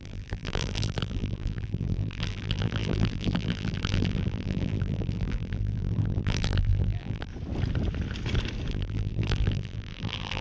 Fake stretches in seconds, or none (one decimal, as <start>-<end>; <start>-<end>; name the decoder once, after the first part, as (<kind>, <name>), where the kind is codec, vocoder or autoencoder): 0.0-7.3 (vocoder, BigVGAN v2); 8.7-10.4

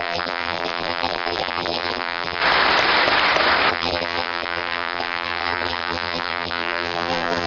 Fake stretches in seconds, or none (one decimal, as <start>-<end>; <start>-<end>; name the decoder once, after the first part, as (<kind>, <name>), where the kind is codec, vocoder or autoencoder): 0.0-2.4 (vocoder, BigVGAN v2); 3.7-7.5

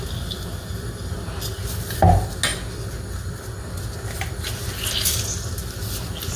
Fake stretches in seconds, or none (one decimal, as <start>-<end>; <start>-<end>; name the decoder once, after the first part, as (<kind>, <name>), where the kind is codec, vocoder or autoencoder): none

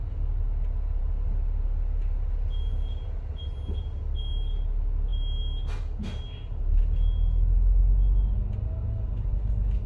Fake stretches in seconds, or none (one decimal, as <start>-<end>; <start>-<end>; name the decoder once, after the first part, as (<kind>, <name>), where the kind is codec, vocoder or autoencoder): none

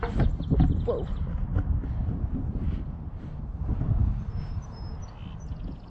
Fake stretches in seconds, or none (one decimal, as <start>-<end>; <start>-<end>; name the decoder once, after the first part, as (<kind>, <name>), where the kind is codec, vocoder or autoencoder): 1.5-5.0 (vocoder, BigVGAN v2)

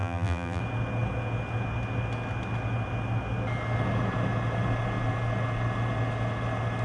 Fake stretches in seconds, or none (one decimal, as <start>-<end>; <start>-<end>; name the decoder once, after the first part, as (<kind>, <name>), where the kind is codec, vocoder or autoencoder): 0.0-0.6 (vocoder, BigVGAN v2)